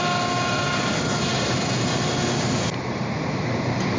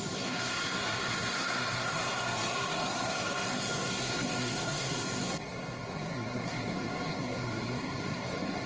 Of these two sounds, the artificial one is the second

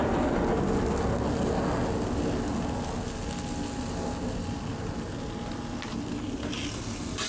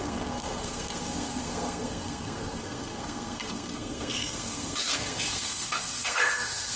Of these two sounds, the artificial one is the second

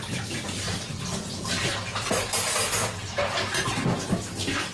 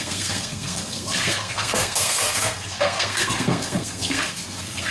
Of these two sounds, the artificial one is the second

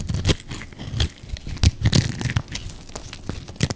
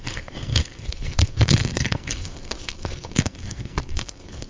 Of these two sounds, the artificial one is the second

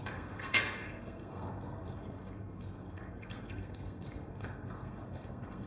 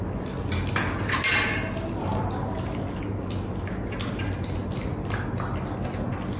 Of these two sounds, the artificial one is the first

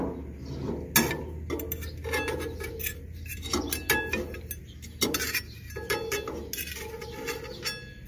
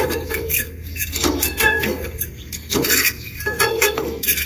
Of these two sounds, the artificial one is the second